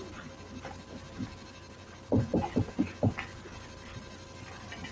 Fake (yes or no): no